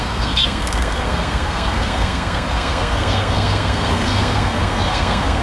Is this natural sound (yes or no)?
no